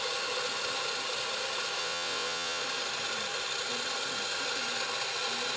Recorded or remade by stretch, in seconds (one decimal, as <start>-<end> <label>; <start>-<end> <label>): 0.0-1.8 recorded; 1.8-2.6 remade; 2.6-5.6 recorded